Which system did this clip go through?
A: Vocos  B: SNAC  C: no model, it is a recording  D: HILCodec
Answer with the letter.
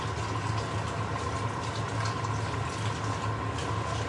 C